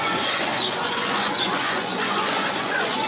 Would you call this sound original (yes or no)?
no